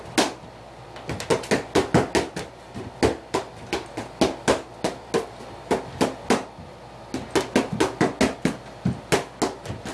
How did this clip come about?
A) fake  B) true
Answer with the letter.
B